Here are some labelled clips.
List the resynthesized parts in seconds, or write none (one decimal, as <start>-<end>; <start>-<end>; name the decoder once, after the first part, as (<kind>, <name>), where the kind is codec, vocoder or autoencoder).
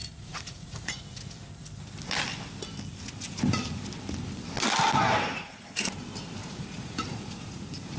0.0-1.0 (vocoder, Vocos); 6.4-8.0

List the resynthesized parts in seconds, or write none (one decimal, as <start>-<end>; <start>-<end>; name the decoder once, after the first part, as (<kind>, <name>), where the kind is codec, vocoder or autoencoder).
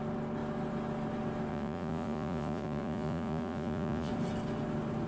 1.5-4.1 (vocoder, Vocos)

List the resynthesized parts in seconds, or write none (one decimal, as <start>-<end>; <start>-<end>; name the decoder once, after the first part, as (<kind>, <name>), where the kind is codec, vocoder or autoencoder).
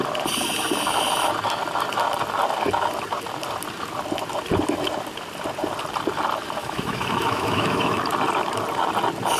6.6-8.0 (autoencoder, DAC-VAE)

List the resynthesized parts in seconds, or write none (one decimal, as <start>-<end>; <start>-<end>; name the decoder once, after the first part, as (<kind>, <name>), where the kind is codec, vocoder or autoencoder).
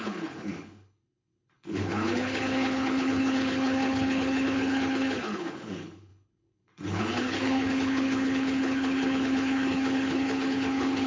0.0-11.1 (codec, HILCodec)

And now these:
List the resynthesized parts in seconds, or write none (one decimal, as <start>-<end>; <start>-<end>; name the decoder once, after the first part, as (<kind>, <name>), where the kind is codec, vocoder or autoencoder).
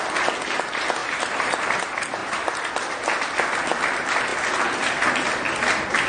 1.0-1.8 (vocoder, BigVGAN v2); 2.2-2.7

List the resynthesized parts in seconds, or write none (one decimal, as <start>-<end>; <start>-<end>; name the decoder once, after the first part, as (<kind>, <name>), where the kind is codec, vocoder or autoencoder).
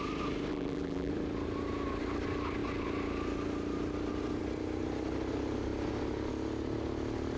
0.5-1.1 (vocoder, BigVGAN v2)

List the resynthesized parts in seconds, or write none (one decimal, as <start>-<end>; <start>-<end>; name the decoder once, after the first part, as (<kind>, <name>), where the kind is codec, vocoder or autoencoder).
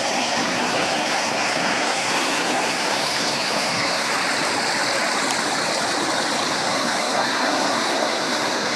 0.0-4.1 (codec, SNAC); 6.5-8.8